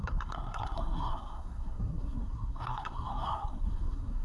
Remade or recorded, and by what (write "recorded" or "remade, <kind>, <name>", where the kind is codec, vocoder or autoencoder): remade, codec, SNAC